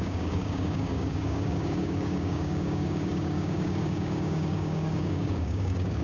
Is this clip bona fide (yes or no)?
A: no